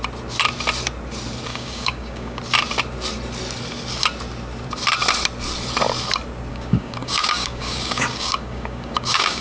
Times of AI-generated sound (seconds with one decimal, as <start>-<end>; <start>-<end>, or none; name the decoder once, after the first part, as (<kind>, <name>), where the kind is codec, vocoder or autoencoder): 1.5-2.4 (codec, DAC); 6.5-9.4